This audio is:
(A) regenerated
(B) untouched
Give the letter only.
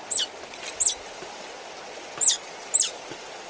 B